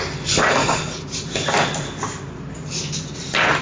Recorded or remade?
recorded